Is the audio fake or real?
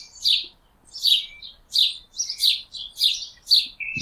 real